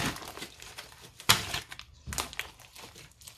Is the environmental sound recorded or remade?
recorded